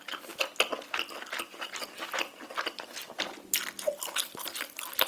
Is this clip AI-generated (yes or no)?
no